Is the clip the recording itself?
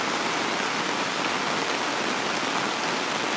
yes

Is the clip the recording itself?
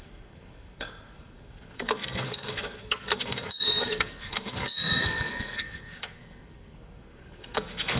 no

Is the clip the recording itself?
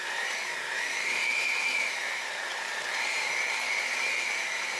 no